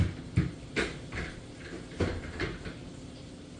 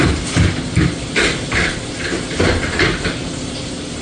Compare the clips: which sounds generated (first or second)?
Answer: second